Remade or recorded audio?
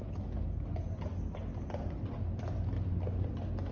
recorded